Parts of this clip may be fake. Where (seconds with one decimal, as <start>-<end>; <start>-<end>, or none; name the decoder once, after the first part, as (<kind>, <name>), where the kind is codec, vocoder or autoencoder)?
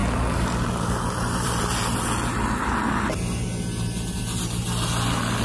0.0-1.6 (vocoder, BigVGAN v2)